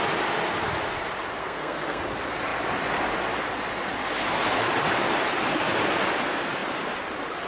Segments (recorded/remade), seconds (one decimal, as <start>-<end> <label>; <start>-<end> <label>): 0.0-1.4 recorded; 1.4-2.0 remade; 2.0-7.5 recorded